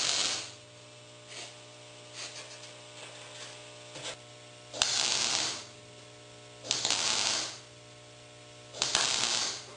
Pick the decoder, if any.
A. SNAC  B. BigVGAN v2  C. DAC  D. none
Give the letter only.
D